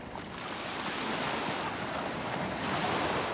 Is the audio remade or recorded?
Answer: recorded